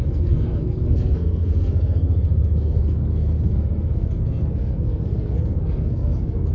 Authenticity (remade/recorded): remade